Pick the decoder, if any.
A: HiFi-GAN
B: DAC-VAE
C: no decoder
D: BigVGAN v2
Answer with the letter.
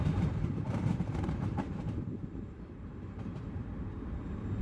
D